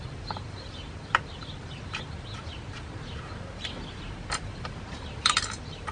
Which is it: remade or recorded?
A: remade